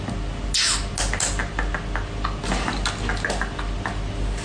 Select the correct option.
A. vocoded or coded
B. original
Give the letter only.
B